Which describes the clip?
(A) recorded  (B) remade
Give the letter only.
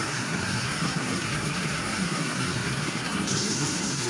B